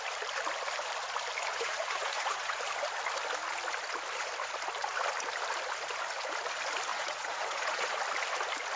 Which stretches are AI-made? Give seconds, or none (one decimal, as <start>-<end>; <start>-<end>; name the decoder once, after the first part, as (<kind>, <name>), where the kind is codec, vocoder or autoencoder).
1.5-2.6 (vocoder, Vocos); 6.9-8.0